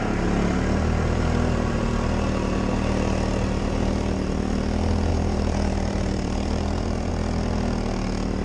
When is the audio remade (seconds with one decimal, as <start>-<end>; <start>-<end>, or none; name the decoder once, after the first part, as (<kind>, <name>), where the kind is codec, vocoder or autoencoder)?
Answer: 5.1-7.1 (vocoder, BigVGAN v2)

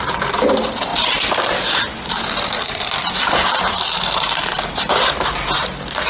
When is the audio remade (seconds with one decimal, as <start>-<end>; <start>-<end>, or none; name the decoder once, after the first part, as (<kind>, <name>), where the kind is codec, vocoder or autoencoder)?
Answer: 0.0-0.9 (vocoder, BigVGAN v2); 1.5-6.1